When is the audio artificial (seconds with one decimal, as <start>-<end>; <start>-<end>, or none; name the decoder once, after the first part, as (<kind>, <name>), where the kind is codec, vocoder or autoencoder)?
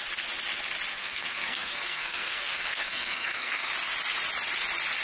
0.9-3.7 (codec, SNAC)